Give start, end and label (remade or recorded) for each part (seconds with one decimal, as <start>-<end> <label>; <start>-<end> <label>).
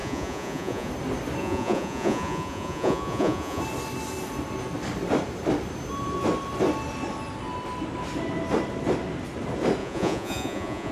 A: 0.0-0.9 remade; 0.9-1.4 recorded; 1.4-3.6 remade; 3.6-9.8 recorded; 9.8-10.9 remade